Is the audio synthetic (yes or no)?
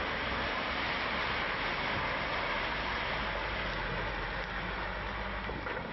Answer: no